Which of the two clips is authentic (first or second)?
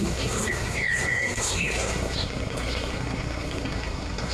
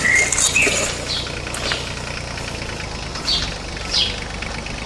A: second